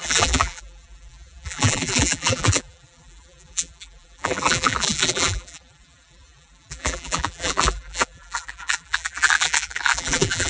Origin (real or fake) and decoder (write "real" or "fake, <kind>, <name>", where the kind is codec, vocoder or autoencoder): fake, vocoder, BigVGAN v2